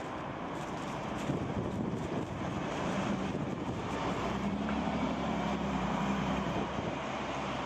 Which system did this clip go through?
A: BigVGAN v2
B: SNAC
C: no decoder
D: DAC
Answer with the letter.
A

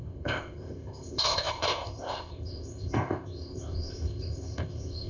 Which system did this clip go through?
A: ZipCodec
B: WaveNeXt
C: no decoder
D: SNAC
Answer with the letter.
A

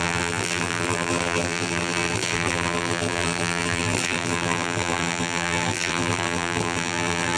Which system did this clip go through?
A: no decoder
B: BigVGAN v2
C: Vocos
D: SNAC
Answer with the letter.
B